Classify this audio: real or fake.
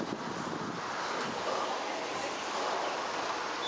real